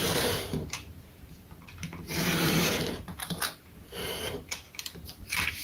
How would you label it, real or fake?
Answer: fake